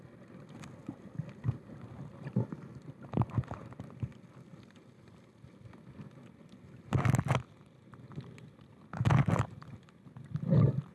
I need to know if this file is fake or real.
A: real